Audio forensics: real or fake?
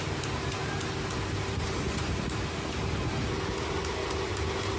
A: real